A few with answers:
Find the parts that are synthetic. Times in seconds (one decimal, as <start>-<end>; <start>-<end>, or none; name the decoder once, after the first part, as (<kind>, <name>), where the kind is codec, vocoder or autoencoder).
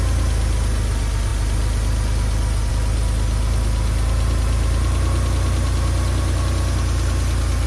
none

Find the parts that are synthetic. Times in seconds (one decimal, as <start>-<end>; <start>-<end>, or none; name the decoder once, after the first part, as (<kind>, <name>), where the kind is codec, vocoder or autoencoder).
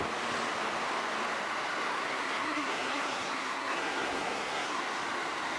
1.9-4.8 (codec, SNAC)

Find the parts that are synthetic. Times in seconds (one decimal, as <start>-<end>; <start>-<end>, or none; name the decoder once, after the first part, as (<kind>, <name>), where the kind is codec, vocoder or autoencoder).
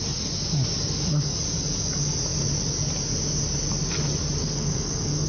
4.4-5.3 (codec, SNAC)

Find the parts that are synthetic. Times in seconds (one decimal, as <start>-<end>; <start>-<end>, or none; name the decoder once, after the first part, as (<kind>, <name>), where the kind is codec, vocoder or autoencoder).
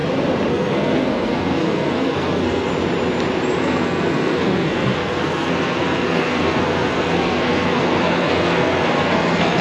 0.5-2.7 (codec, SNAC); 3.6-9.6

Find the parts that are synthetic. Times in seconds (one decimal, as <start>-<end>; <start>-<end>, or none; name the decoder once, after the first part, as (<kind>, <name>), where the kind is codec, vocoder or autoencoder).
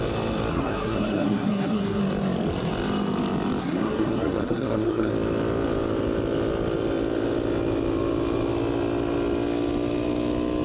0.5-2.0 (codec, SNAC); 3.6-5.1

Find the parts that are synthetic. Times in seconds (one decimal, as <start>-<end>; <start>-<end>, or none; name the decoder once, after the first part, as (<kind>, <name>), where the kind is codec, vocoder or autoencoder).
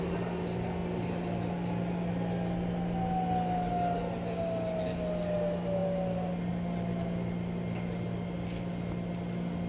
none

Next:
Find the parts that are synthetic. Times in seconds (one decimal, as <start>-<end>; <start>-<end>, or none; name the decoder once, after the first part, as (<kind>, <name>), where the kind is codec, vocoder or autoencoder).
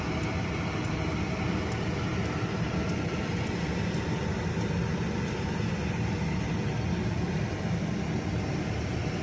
none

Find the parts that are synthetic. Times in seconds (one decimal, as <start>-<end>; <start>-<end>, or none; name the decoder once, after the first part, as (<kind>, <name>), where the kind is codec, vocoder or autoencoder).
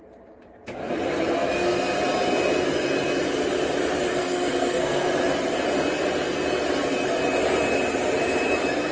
4.1-5.1 (codec, SNAC)